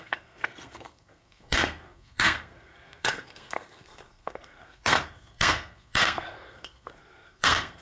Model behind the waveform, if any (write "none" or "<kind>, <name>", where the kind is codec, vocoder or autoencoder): codec, SNAC